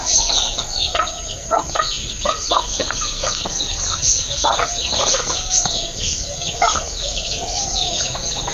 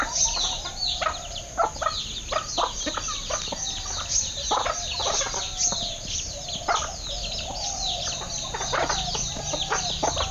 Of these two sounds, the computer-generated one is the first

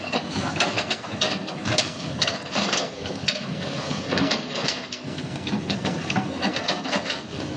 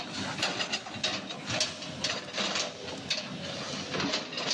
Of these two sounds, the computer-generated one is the first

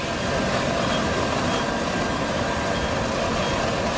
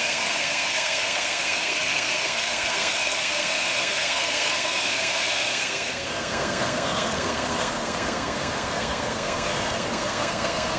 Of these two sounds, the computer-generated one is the second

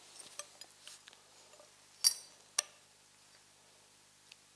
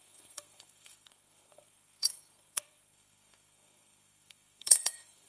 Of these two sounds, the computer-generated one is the second